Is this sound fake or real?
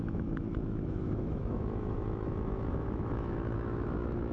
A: fake